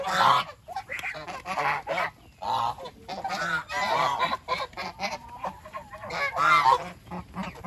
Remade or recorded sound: recorded